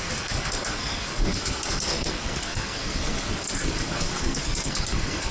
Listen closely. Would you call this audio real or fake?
fake